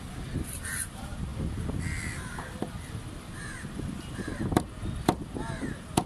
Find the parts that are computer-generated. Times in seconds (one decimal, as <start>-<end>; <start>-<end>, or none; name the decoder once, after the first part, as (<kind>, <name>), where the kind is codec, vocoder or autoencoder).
none